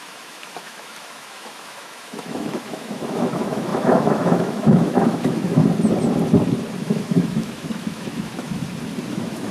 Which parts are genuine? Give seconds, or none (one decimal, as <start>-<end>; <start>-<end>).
5.6-6.8; 8.6-9.1